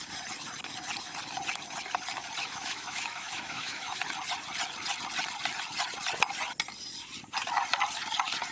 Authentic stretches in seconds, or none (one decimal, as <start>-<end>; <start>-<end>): 0.0-2.4; 4.0-8.5